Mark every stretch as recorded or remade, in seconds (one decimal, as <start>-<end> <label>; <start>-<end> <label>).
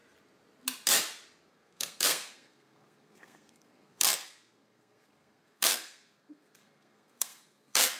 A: 0.0-1.5 recorded; 1.5-8.0 remade